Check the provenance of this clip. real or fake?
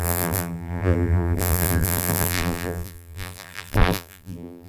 fake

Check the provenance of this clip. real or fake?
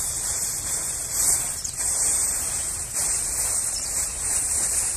fake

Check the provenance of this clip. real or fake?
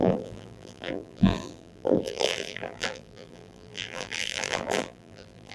fake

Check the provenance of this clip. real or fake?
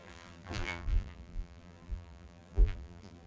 fake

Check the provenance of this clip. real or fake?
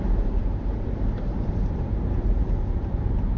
fake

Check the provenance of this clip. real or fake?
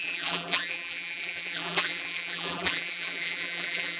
fake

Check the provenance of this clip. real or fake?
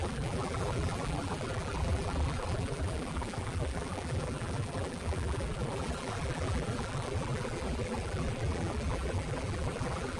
fake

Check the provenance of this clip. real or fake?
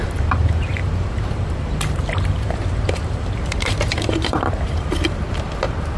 fake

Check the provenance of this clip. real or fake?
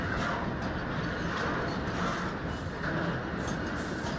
real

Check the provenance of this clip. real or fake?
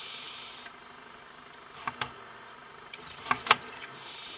fake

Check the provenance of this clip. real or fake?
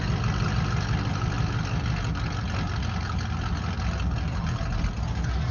real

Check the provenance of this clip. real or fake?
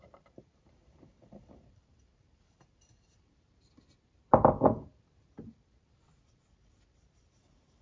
fake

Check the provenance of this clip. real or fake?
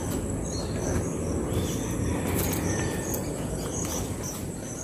real